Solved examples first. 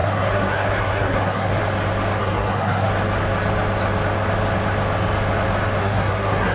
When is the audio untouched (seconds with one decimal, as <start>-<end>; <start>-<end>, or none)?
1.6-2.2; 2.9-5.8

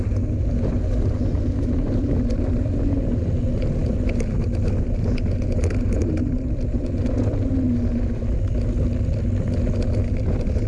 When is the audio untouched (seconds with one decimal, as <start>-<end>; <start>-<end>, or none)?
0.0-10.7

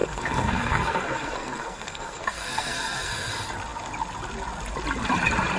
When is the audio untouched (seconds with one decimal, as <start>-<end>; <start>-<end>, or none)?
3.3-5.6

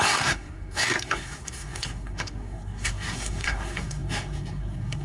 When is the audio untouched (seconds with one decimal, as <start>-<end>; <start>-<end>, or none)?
none